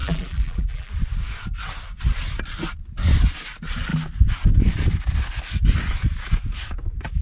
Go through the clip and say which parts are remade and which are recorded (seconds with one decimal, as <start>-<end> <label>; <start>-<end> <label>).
0.0-0.9 remade; 0.9-7.2 recorded